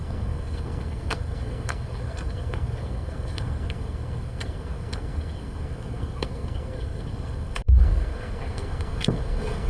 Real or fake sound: fake